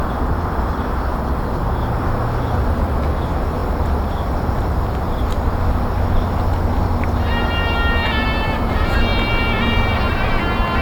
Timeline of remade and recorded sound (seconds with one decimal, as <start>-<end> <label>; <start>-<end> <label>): 0.0-10.8 recorded